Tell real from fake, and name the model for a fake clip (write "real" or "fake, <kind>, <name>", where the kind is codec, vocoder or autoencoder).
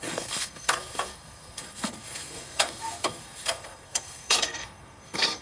fake, codec, SNAC